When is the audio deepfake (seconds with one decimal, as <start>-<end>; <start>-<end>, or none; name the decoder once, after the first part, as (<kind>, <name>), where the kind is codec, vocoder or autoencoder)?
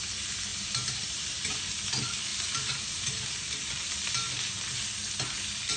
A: 0.5-1.5 (vocoder, BigVGAN v2); 2.3-3.9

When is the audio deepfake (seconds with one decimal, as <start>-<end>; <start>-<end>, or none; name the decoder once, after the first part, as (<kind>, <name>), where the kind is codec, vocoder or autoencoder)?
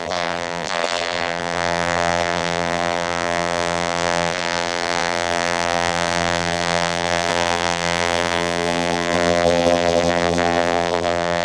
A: 0.0-11.4 (vocoder, BigVGAN v2)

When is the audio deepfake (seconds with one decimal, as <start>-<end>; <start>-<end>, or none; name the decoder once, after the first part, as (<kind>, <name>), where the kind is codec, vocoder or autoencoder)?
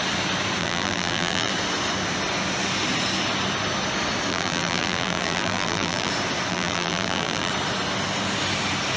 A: 0.6-1.5 (vocoder, BigVGAN v2); 4.3-6.1; 6.5-7.5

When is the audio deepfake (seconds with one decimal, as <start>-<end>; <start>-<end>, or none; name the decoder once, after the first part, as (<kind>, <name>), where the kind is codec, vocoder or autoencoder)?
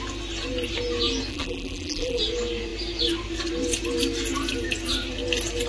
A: 1.3-2.2 (vocoder, BigVGAN v2)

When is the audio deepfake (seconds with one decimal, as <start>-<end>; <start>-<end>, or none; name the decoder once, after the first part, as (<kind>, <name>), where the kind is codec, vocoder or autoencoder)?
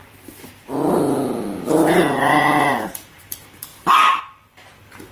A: 2.3-3.7 (vocoder, BigVGAN v2); 4.2-5.1